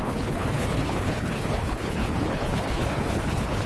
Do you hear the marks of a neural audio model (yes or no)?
yes